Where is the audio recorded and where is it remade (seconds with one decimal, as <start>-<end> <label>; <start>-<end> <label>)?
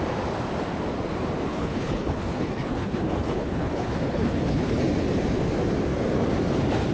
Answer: 0.0-1.5 recorded; 1.5-4.8 remade; 4.8-6.9 recorded